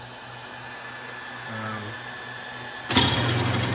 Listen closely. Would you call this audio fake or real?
real